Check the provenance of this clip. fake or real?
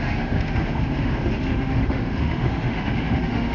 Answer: fake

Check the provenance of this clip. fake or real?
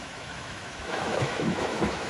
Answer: fake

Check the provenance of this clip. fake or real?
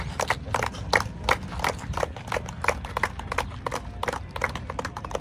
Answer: real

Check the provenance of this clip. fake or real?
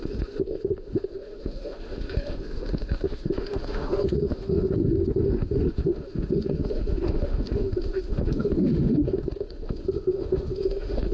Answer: fake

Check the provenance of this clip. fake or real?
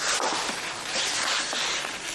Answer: real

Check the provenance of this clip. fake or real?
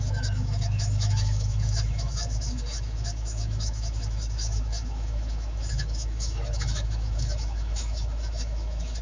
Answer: fake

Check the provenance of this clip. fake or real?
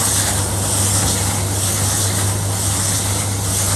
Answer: real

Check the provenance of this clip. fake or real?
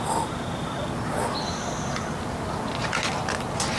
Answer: real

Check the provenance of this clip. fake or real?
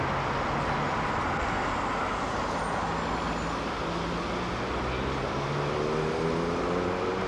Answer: real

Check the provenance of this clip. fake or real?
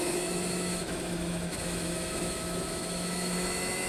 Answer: fake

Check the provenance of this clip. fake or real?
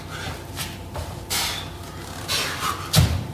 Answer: real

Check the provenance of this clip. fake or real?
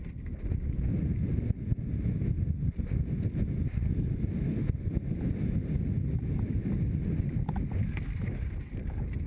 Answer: real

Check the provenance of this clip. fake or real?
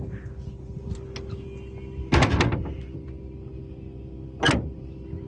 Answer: real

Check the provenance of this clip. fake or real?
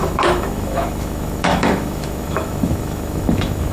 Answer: fake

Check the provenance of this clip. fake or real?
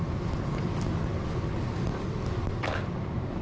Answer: real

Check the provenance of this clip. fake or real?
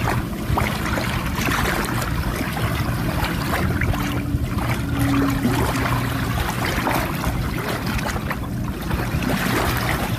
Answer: real